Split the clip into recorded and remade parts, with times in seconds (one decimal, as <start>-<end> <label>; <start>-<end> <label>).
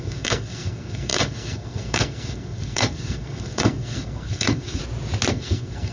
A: 0.0-4.8 remade; 4.8-5.3 recorded; 5.3-5.9 remade